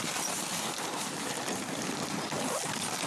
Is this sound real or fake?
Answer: real